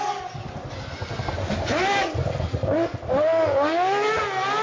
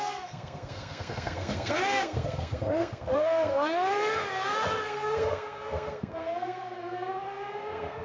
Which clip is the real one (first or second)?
first